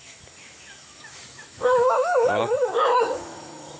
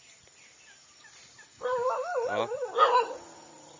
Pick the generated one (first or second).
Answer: first